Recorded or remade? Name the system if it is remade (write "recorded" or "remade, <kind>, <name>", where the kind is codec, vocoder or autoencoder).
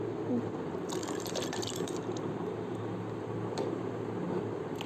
recorded